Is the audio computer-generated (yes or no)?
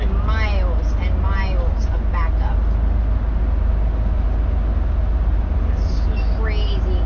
no